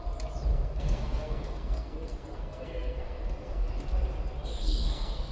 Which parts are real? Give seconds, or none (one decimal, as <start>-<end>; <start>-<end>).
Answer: 0.0-0.5; 3.7-4.5